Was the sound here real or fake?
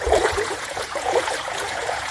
fake